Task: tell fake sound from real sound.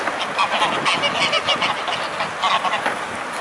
real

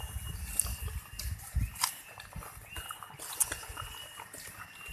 real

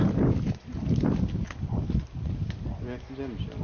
real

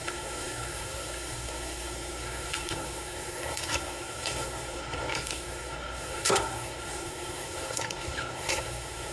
fake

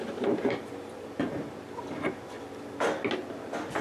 real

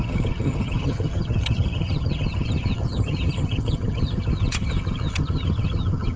fake